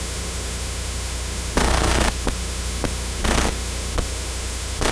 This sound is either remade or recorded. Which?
remade